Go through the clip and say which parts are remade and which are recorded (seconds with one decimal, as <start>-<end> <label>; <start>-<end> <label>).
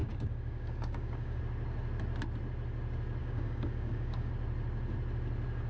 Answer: 0.0-1.4 remade; 1.4-3.2 recorded; 3.2-4.3 remade; 4.3-5.7 recorded